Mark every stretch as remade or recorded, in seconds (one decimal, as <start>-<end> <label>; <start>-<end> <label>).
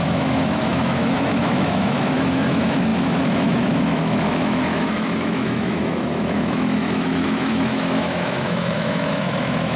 0.0-9.8 remade